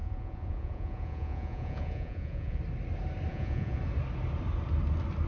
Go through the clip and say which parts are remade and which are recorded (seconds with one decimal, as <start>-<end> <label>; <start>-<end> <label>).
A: 0.0-2.6 remade; 2.6-3.3 recorded; 3.3-3.8 remade; 3.8-5.3 recorded